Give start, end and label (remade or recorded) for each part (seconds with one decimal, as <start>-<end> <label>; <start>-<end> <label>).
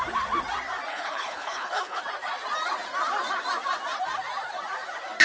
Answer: 0.0-0.9 recorded; 0.9-2.0 remade; 2.0-5.2 recorded